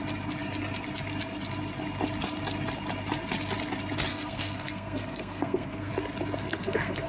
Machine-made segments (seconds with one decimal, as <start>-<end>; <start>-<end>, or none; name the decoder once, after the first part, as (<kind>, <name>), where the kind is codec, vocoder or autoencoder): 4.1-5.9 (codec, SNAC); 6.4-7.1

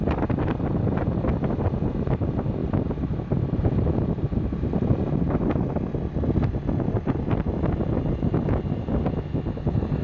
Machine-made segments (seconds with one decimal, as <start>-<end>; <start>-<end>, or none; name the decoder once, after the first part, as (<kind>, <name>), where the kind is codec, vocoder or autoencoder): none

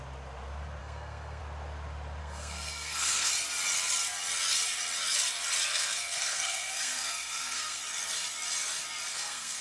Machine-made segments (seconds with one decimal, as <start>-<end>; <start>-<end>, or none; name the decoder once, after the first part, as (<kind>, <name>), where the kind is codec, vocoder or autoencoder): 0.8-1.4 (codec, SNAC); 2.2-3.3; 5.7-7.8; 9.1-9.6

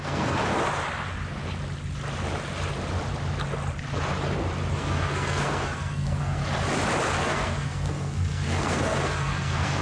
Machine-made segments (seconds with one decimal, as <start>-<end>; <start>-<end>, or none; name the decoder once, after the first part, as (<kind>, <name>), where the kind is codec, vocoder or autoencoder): 0.0-0.4 (codec, SNAC); 4.7-6.4; 7.2-9.8